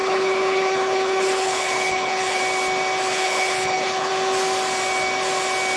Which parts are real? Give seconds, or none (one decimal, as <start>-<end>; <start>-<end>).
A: 2.4-3.1; 4.1-5.8

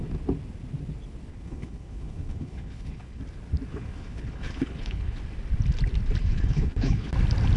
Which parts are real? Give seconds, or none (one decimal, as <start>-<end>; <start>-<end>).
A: 0.0-1.3; 3.2-3.7; 5.2-6.2; 7.1-7.6

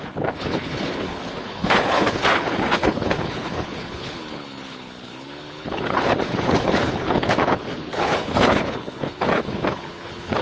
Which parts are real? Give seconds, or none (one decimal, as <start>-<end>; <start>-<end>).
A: none

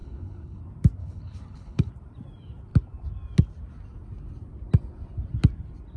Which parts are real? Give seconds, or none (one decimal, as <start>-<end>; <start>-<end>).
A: 0.6-1.0; 1.9-6.0